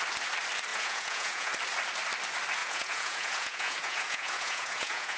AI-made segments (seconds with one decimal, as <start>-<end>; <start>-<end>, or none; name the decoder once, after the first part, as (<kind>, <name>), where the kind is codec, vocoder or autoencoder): 0.7-1.5 (vocoder, Vocos); 2.6-5.2